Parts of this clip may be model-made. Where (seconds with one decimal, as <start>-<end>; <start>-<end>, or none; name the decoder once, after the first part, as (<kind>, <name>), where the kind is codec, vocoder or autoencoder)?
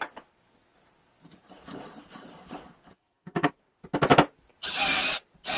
3.0-3.5 (codec, SNAC)